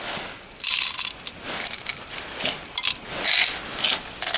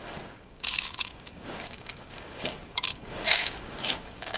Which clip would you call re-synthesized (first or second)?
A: second